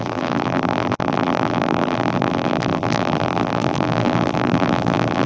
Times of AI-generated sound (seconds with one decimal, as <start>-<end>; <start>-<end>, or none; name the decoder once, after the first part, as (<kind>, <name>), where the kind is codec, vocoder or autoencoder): 0.0-5.3 (vocoder, BigVGAN v2)